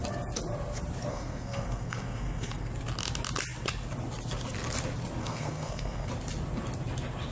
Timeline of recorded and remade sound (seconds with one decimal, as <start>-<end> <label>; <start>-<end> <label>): 0.0-1.1 recorded; 1.1-2.7 remade; 2.7-5.2 recorded; 5.2-6.1 remade; 6.1-7.3 recorded